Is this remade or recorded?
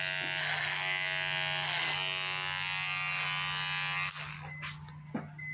recorded